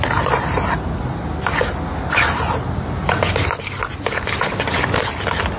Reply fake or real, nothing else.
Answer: real